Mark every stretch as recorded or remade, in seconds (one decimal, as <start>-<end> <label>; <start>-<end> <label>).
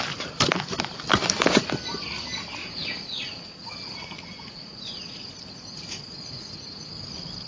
0.0-2.6 recorded; 2.6-6.9 remade; 6.9-7.5 recorded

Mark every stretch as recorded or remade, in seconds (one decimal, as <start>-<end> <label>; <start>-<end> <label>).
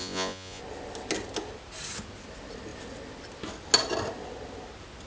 0.0-0.6 remade; 0.6-5.1 recorded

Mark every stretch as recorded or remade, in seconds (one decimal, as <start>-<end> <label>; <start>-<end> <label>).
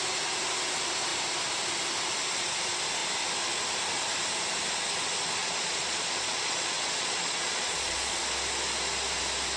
0.0-5.4 recorded; 5.4-8.2 remade; 8.2-9.6 recorded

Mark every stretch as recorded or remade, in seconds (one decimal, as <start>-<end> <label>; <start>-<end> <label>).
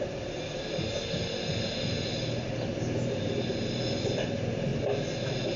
0.0-5.6 recorded